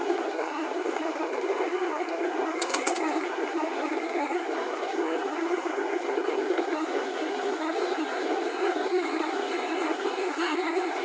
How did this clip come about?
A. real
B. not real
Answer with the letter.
B